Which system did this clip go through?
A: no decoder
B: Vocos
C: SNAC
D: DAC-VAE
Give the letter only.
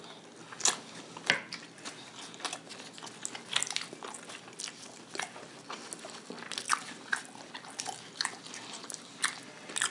A